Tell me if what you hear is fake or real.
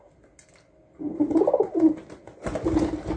real